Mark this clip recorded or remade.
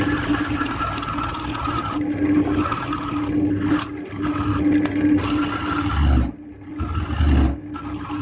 recorded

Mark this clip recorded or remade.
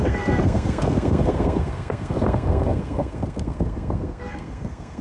remade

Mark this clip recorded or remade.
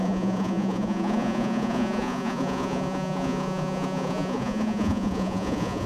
remade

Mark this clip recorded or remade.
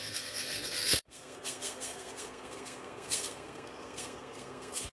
remade